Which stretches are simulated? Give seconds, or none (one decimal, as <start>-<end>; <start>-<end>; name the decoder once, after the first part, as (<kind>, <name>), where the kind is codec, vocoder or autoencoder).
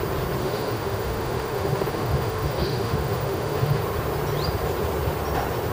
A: 0.4-3.8 (autoencoder, DAC-VAE)